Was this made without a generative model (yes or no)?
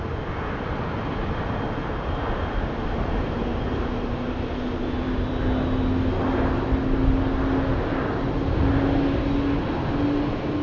yes